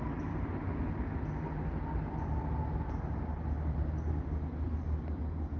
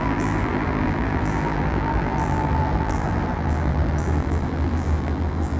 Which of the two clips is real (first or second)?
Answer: first